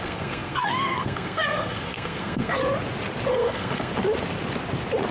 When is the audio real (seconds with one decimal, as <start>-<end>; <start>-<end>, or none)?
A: 2.6-3.3; 3.9-5.1